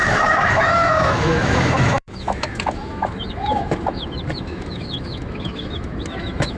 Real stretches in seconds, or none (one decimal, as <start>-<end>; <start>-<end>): none